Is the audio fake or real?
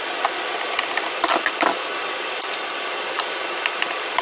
fake